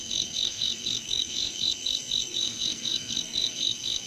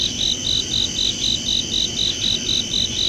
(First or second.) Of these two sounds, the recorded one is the second